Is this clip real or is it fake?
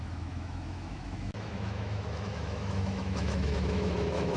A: fake